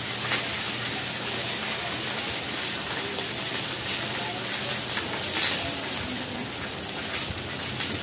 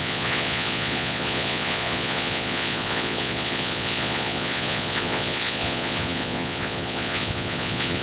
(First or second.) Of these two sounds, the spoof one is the second